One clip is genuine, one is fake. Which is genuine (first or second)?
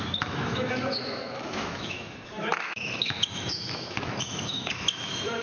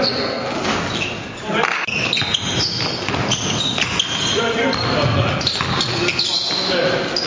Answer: second